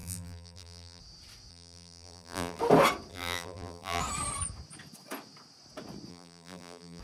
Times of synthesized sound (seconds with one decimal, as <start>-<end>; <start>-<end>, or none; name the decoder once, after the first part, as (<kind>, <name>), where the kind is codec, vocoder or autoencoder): 0.0-1.0 (vocoder, BigVGAN v2); 1.5-2.6; 3.1-4.0; 6.1-7.0